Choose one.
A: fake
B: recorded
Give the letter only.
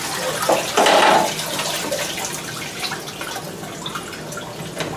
B